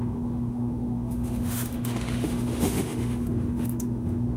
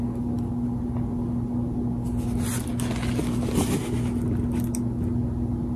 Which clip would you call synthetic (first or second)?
first